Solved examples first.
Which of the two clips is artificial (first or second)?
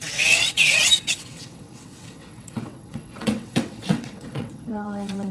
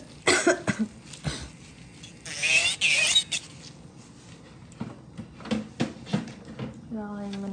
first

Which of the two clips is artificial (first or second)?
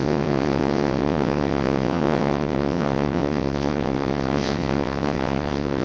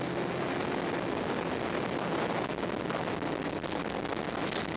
first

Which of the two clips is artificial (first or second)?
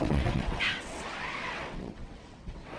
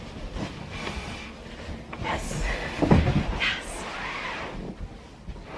first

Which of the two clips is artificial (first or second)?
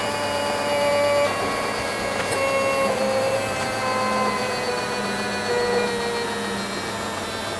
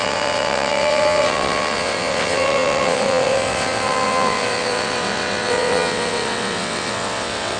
second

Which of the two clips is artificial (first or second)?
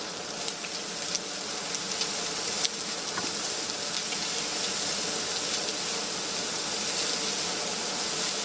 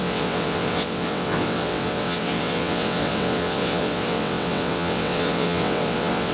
second